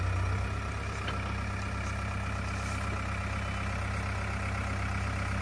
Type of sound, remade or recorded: recorded